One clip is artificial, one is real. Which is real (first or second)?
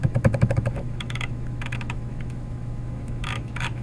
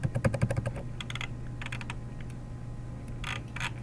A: second